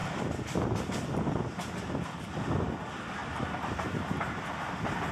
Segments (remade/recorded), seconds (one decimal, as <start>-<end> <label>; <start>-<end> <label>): 0.0-5.1 recorded